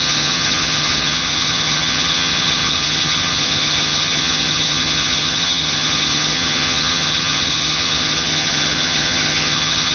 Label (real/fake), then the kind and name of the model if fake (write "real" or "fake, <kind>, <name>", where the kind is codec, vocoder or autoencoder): fake, vocoder, HiFi-GAN